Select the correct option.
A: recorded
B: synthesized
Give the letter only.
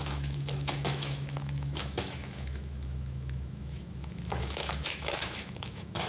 B